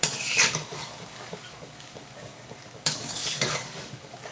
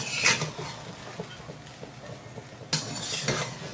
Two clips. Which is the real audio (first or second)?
second